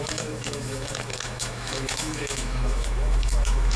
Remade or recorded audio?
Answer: remade